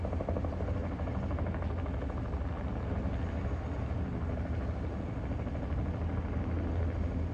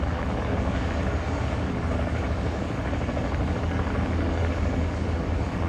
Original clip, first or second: first